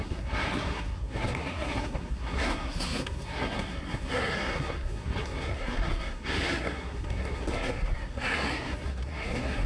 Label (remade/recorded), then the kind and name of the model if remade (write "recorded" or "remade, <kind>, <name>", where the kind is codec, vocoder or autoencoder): remade, codec, SNAC